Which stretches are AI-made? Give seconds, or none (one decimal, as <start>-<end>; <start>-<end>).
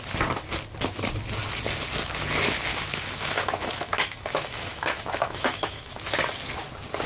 2.7-6.0